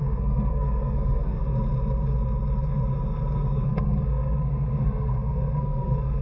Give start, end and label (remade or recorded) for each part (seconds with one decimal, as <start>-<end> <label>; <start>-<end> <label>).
0.0-1.4 remade; 1.4-3.5 recorded; 3.5-6.2 remade